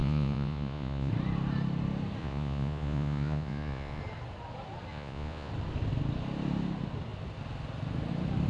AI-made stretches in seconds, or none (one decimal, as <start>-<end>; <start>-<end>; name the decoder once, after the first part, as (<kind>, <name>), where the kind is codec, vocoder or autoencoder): 0.0-1.1 (vocoder, Vocos); 2.2-4.0; 4.9-5.5